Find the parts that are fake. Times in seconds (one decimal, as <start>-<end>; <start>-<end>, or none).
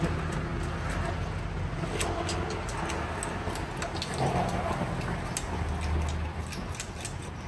none